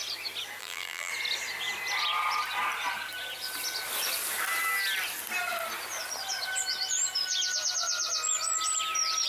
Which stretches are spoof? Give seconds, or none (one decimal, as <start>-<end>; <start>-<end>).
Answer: 0.6-1.1